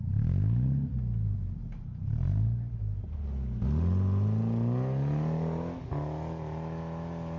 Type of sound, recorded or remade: recorded